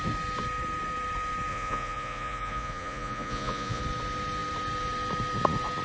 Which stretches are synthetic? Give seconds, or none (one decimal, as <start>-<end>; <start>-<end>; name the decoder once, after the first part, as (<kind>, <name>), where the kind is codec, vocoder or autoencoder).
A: 1.5-3.8 (vocoder, Vocos)

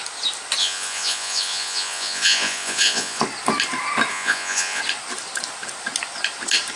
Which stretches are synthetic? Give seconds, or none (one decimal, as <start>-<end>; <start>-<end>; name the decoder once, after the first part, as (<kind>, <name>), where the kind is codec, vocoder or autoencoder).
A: 0.6-3.2 (vocoder, Vocos); 4.1-4.8

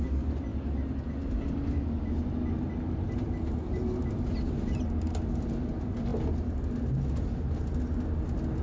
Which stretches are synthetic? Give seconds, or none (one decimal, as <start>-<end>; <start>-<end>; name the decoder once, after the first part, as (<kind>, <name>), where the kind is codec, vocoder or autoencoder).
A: none

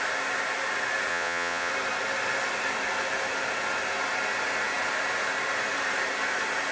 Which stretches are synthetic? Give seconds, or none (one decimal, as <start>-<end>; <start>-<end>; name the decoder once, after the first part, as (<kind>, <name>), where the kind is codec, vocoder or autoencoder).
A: 1.1-1.7 (vocoder, Vocos)